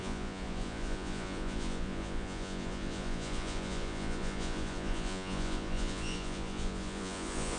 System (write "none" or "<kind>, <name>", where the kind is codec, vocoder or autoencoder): vocoder, Vocos